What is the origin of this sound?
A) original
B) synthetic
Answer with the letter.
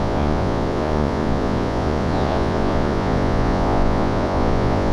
B